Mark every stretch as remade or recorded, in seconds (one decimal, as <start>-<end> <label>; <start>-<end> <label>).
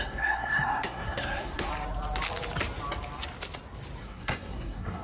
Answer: 0.0-1.7 remade; 1.7-4.0 recorded; 4.0-5.0 remade